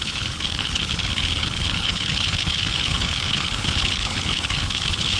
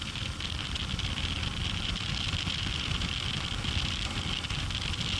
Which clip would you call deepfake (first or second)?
first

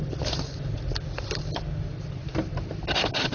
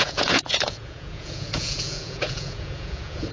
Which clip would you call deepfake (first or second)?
second